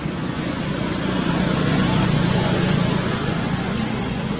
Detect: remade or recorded remade